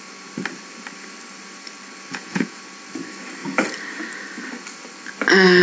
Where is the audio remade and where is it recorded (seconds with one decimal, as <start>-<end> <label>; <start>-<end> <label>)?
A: 0.0-2.1 recorded; 2.1-2.6 remade; 2.6-5.6 recorded